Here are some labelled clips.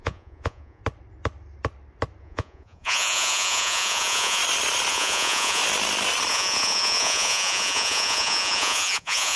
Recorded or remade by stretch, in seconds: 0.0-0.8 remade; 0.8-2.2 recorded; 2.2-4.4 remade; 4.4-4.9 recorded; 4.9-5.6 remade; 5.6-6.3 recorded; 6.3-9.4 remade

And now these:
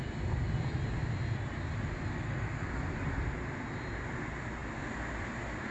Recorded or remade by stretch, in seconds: 0.0-2.1 recorded; 2.1-2.7 remade; 2.7-5.7 recorded

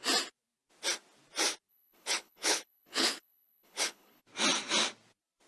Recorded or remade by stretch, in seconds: 0.0-1.7 recorded; 1.7-4.2 remade; 4.2-5.5 recorded

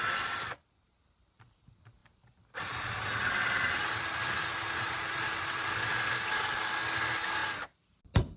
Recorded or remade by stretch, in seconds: 0.0-8.4 recorded

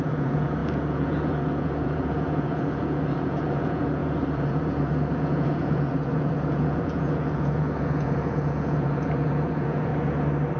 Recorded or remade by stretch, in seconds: 0.0-9.9 remade; 9.9-10.6 recorded

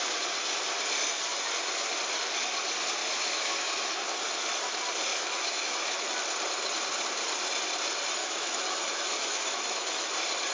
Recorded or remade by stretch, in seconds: 0.0-3.0 recorded; 3.0-4.0 remade; 4.0-5.1 recorded; 5.1-6.1 remade; 6.1-8.2 recorded; 8.2-10.1 remade; 10.1-10.5 recorded

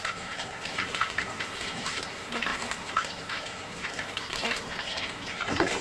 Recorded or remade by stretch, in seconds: 0.0-5.8 remade